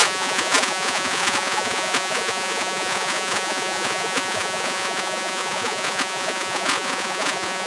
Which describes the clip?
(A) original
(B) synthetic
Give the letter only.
B